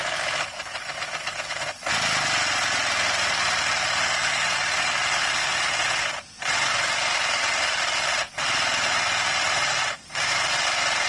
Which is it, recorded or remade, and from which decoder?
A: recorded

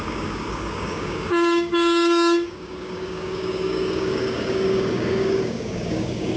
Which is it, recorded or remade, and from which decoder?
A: remade, codec, DAC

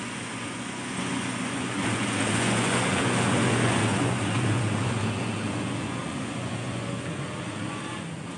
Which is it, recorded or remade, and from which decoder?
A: remade, vocoder, Vocos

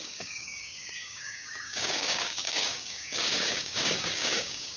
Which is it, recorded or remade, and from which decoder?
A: remade, codec, DAC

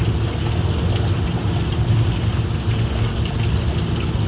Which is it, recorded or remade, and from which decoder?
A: recorded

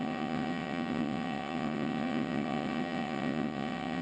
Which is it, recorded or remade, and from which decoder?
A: remade, vocoder, WaveNeXt